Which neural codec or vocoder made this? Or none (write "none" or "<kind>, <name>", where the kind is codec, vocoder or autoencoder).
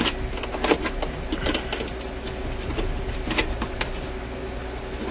none